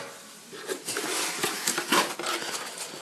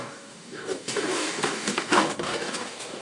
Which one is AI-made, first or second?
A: second